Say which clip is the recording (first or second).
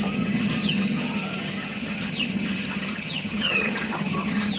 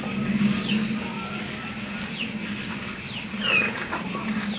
second